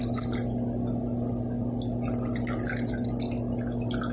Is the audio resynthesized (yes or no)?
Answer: no